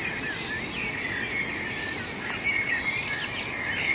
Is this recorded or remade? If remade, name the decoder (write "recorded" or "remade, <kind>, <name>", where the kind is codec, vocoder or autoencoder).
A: recorded